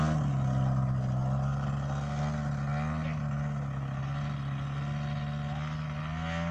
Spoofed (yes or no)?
no